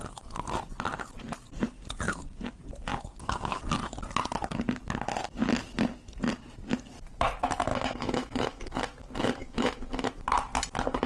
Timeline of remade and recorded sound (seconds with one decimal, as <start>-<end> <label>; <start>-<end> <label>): 0.0-7.7 recorded; 7.7-8.8 remade; 8.8-9.4 recorded; 9.4-10.1 remade; 10.1-11.1 recorded